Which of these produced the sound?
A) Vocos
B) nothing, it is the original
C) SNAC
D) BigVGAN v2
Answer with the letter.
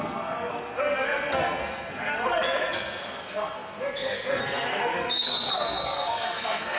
C